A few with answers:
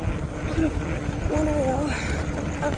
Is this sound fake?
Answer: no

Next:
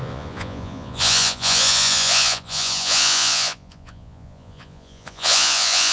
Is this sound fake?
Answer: yes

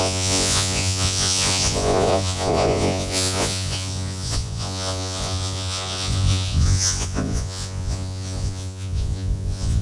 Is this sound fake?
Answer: yes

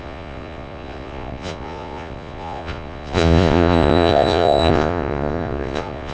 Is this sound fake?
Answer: yes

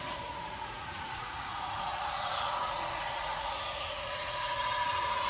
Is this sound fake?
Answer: yes